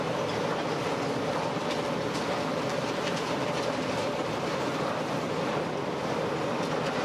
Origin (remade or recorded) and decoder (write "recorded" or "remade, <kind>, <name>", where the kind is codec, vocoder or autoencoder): recorded